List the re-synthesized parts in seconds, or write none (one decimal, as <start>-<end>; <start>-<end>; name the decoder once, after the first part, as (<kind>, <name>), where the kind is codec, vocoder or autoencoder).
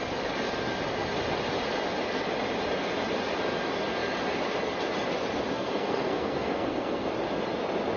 5.5-7.1 (codec, SNAC)